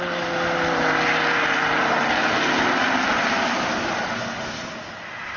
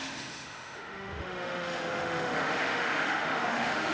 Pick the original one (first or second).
first